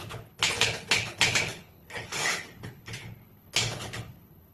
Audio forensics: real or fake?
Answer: fake